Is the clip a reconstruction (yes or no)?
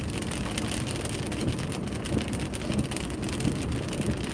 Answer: no